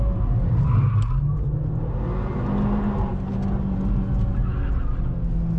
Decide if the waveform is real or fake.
real